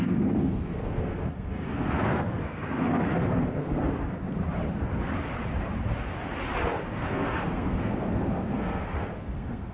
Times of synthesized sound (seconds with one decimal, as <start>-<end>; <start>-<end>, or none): 0.0-3.8; 6.9-9.7